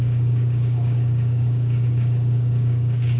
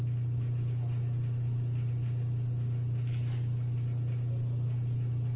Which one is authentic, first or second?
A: second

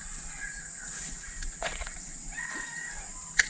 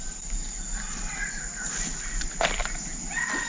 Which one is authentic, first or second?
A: second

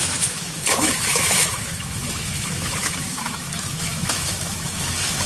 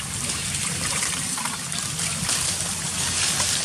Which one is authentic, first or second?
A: second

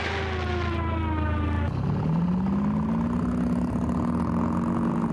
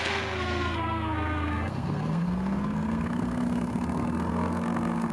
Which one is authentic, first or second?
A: first